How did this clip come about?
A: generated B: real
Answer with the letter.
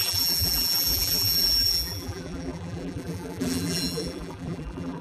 A